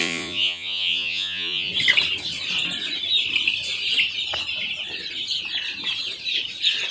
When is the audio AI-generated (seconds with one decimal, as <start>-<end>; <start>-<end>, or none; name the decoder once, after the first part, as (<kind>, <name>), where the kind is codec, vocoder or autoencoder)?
0.0-1.7 (vocoder, Vocos)